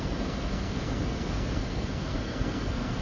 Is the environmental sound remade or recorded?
remade